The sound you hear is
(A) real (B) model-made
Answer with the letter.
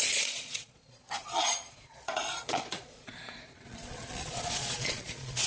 B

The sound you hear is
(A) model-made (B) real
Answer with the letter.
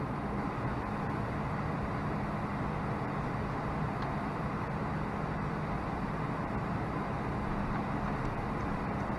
B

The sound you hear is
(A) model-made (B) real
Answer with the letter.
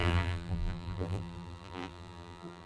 A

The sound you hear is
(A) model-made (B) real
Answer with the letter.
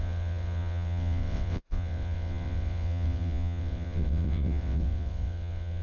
A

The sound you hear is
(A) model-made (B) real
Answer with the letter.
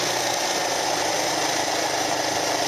B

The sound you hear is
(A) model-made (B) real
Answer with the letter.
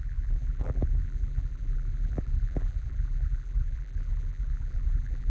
A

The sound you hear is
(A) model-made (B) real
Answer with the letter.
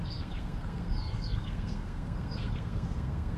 A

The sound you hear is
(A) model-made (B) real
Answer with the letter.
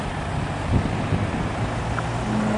B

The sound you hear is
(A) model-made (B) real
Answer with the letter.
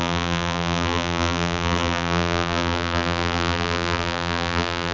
A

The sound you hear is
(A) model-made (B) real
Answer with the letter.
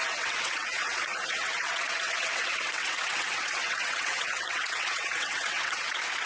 A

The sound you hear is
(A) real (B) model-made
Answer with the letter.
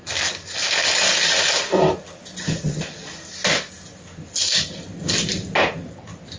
A